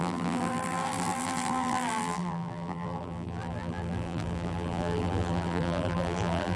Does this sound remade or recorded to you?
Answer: remade